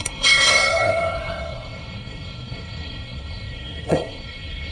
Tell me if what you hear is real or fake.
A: fake